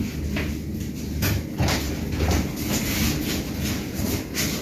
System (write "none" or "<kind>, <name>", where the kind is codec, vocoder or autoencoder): none